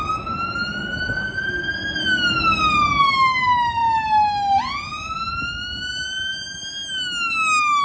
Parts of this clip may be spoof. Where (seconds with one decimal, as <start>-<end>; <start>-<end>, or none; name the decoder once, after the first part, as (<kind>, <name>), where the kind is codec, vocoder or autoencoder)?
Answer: none